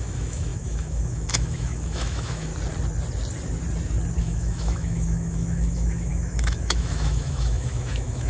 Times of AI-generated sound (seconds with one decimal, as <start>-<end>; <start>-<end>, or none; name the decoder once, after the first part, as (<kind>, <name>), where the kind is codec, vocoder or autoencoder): 0.0-2.5 (autoencoder, DAC-VAE); 4.2-8.3